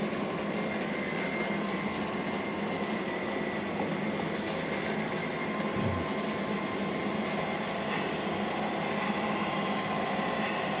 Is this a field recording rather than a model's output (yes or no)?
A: yes